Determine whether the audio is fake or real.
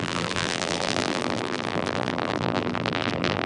fake